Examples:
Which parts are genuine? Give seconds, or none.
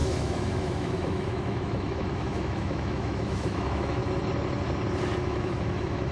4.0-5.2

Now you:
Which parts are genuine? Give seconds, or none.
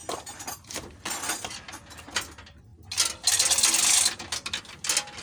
0.0-5.2